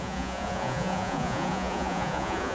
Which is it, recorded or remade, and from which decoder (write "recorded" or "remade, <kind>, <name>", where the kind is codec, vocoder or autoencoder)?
remade, vocoder, Vocos